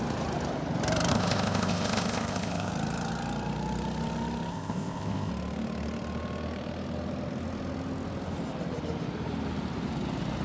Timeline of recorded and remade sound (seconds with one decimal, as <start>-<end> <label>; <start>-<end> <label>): 0.0-1.1 recorded; 1.1-2.7 remade; 2.7-4.5 recorded; 4.5-5.3 remade; 5.3-10.4 recorded